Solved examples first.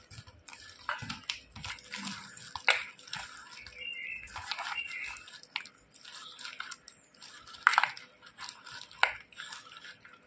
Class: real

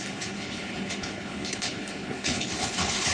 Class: fake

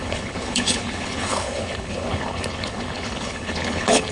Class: fake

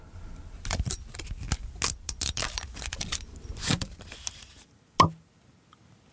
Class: real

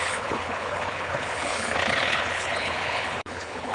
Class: fake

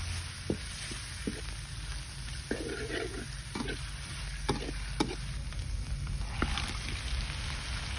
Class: real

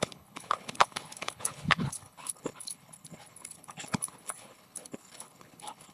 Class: fake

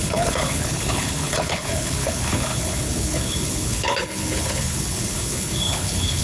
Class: fake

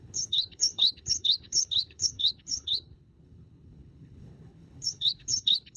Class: fake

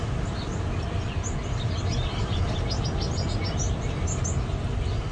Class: real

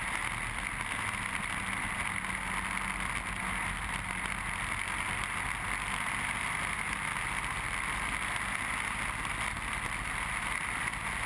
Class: real